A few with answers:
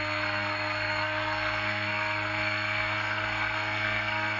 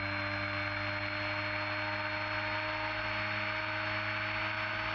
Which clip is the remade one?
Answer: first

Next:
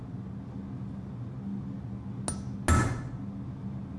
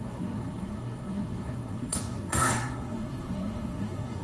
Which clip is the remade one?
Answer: second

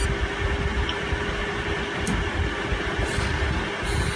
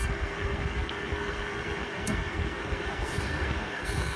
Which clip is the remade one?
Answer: second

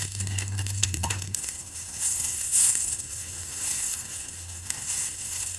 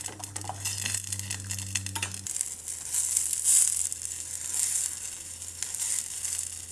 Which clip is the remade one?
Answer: first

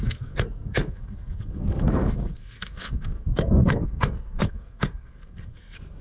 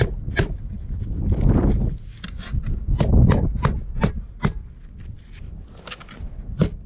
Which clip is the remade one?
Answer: first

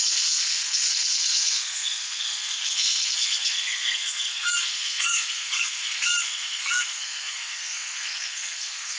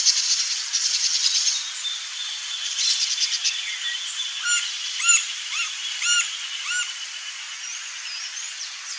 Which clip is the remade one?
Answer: first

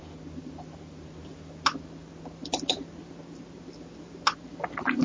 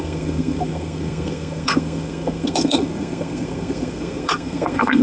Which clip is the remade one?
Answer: second